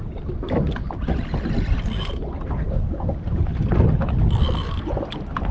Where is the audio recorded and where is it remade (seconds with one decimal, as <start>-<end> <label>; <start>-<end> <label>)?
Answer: 0.0-5.5 recorded

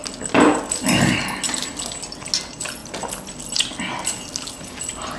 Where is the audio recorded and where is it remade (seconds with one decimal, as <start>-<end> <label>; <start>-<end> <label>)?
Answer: 0.0-5.2 recorded

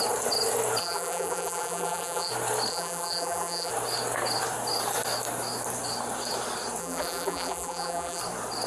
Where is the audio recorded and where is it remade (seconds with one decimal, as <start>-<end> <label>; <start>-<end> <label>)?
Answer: 0.0-0.8 recorded; 0.8-2.3 remade; 2.3-2.7 recorded; 2.7-3.7 remade; 3.7-6.8 recorded; 6.8-8.2 remade; 8.2-8.7 recorded

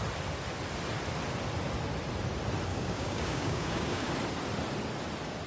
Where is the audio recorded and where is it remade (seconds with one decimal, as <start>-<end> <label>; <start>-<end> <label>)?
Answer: 0.0-2.7 recorded; 2.7-4.1 remade; 4.1-5.5 recorded

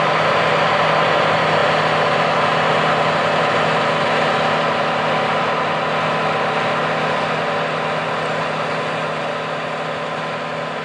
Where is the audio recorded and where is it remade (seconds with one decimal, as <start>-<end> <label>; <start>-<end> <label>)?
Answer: 0.0-10.8 recorded